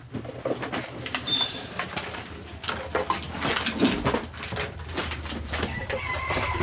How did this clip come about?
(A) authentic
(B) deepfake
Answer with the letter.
A